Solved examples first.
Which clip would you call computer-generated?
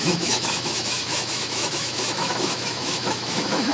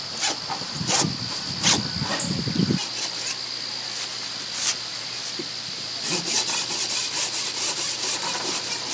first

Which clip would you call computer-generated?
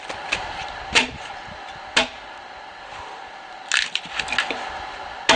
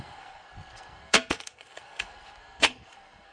second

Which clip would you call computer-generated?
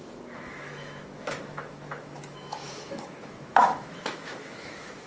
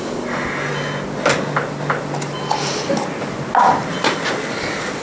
first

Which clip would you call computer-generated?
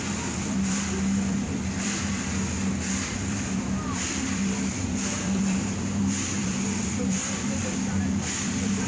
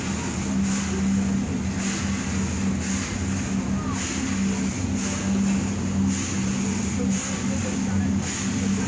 first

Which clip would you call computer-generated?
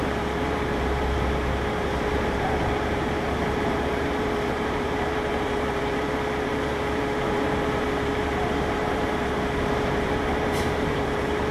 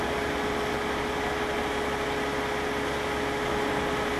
first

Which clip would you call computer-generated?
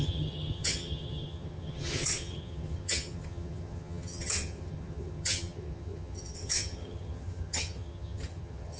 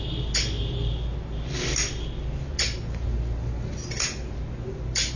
first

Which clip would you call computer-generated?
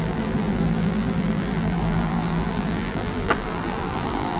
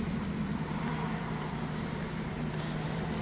first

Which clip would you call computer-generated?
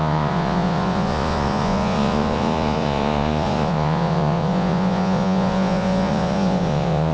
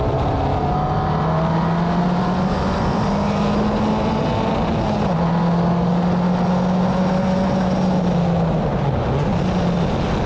first